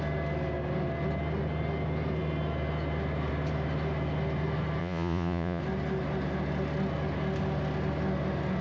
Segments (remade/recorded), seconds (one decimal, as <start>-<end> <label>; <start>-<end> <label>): 0.0-4.8 recorded; 4.8-5.6 remade; 5.6-8.6 recorded